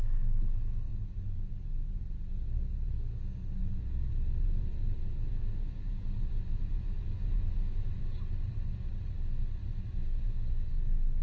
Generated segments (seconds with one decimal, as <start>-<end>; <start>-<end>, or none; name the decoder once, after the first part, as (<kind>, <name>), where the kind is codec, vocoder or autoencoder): 0.9-2.9 (vocoder, Vocos); 3.6-8.0; 9.6-10.7